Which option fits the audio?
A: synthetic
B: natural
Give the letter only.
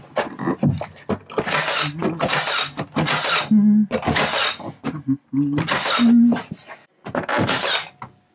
B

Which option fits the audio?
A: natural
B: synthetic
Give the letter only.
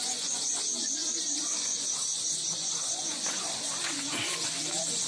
B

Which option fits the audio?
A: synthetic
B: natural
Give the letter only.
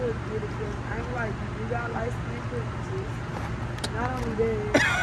B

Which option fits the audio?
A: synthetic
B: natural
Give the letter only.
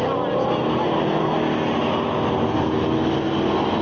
B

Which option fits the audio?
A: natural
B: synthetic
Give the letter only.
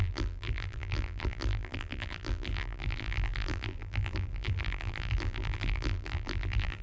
B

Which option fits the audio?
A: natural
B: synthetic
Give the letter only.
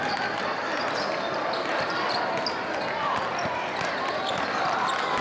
A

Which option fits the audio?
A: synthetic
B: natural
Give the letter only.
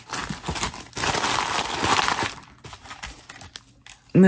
B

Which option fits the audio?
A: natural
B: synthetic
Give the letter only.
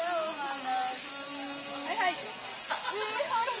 A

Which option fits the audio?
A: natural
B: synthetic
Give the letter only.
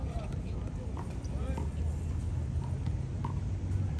A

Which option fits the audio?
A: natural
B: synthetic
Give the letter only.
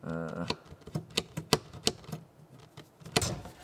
A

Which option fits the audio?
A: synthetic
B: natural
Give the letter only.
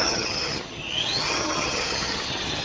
A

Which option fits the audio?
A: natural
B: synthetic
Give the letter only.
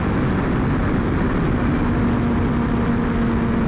A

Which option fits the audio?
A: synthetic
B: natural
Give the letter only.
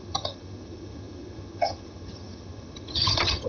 A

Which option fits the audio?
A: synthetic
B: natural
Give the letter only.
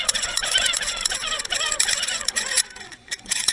A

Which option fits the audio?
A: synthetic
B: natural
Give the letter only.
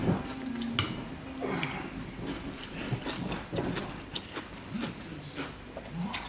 B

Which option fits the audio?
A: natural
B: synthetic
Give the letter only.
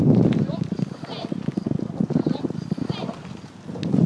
A